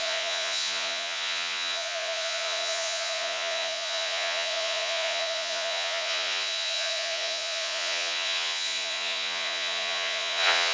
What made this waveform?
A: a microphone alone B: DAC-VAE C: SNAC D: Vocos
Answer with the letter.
D